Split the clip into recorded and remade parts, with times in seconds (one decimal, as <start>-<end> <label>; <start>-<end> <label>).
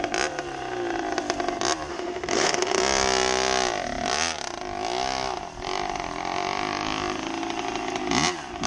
0.0-1.9 recorded; 1.9-2.8 remade; 2.8-8.7 recorded